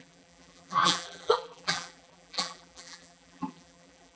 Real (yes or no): no